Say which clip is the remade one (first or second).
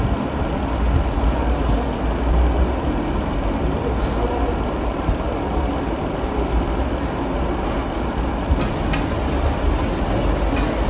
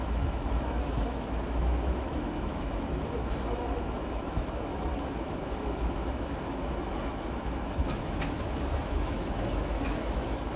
second